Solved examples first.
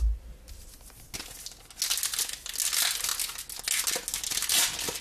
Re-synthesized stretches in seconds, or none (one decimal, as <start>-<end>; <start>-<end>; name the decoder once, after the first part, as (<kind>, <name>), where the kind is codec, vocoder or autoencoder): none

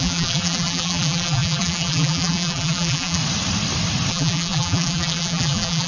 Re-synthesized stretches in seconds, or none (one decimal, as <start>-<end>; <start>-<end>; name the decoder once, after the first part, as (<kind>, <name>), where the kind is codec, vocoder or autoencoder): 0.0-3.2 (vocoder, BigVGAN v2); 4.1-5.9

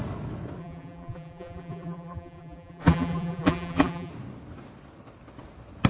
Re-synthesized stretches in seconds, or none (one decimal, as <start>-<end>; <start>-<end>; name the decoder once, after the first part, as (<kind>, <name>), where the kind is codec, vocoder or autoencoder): 0.6-4.1 (vocoder, BigVGAN v2)